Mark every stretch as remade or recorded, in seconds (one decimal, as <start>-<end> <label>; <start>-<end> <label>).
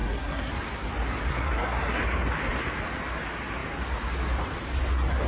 0.0-0.5 remade; 0.5-1.3 recorded; 1.3-2.0 remade; 2.0-5.3 recorded